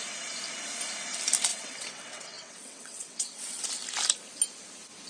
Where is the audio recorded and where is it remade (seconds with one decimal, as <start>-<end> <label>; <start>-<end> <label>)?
0.0-1.5 recorded; 1.5-3.6 remade; 3.6-5.1 recorded